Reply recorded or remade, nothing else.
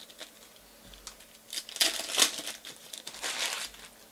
recorded